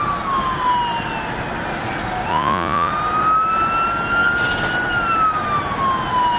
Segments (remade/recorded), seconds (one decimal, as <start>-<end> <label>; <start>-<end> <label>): 0.0-2.3 recorded; 2.3-2.9 remade; 2.9-6.4 recorded